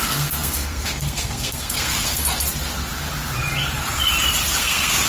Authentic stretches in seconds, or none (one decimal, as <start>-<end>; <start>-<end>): 2.2-4.6